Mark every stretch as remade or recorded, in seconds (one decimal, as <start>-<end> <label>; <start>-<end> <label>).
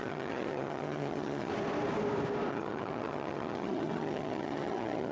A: 0.0-1.5 remade; 1.5-2.5 recorded; 2.5-5.1 remade